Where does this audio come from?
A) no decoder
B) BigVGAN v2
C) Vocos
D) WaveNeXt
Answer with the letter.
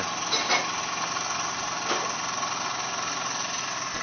A